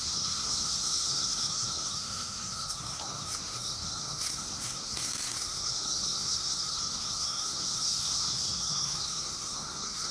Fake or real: fake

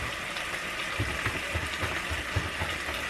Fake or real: real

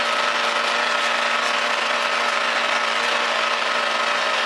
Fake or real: real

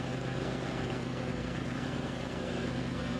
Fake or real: fake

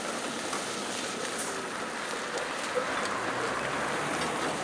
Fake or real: real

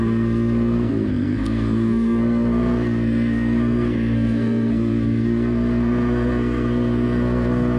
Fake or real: fake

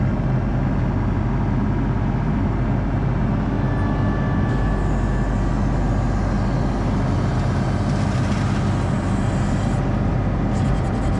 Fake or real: real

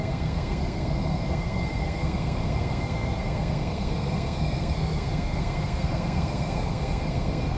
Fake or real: fake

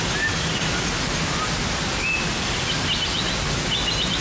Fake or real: real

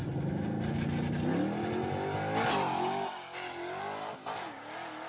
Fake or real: real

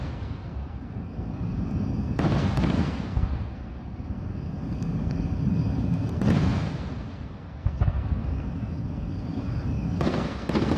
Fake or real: fake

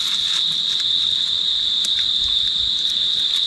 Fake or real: real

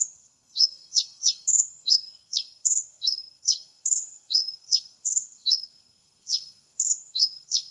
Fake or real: fake